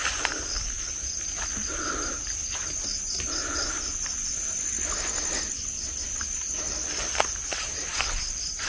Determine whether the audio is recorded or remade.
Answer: recorded